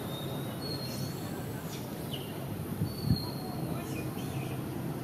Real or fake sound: real